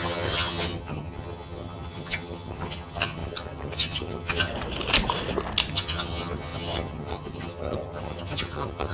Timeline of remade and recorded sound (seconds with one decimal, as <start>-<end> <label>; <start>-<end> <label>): 0.0-4.5 remade; 4.5-5.7 recorded; 5.7-8.9 remade